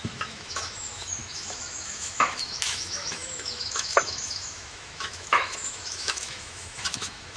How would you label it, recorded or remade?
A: remade